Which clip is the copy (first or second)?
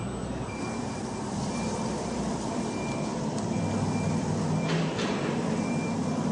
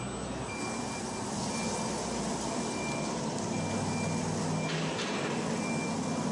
first